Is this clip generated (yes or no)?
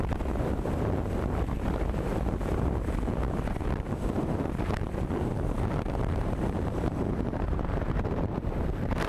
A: yes